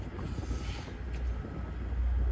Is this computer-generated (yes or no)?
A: no